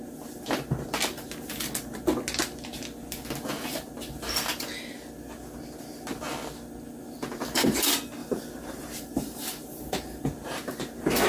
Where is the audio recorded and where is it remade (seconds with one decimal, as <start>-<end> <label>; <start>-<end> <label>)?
0.0-8.2 recorded; 8.2-11.3 remade